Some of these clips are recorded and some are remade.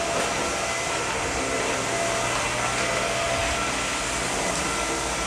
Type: recorded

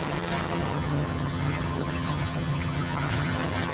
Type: remade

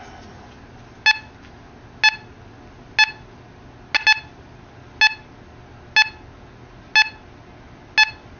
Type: recorded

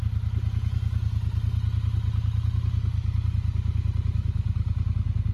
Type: recorded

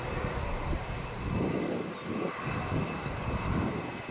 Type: recorded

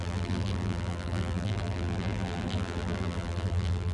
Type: remade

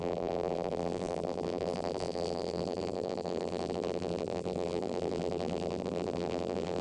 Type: remade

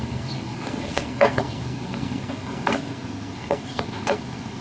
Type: remade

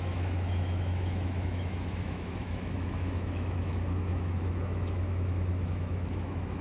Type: remade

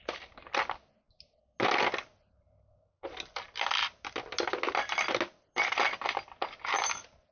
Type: recorded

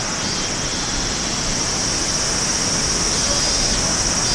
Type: recorded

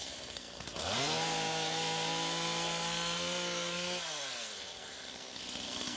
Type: remade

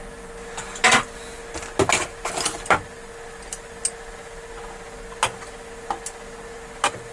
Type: recorded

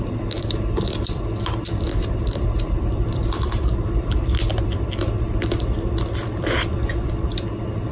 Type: remade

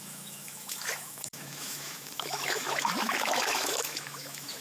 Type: remade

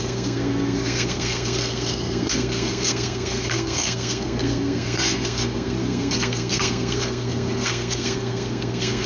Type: remade